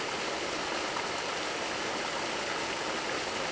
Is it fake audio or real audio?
real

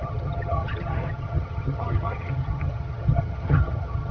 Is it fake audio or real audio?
fake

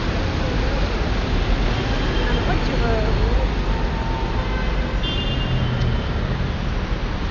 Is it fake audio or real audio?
real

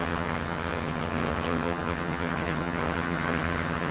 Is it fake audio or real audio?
fake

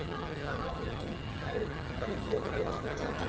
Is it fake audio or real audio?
fake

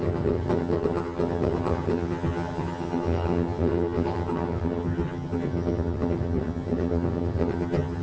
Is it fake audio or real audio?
fake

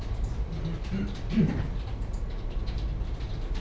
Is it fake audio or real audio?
real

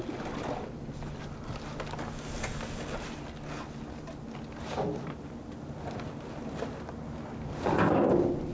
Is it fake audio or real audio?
real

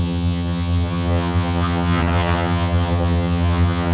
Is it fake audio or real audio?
fake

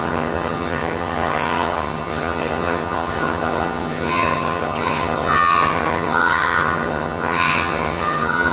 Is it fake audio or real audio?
fake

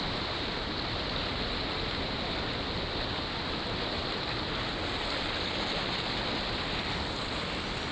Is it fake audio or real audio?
real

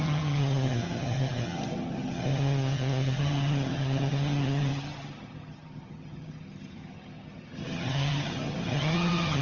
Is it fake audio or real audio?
fake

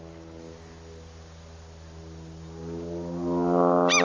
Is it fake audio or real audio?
real